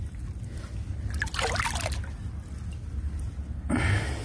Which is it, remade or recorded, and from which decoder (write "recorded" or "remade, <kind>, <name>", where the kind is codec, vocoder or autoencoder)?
recorded